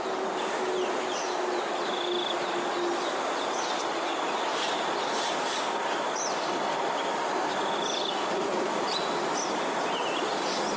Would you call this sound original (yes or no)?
yes